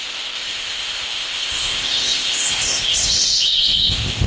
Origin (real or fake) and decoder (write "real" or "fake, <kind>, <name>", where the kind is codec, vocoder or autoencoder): fake, codec, ZipCodec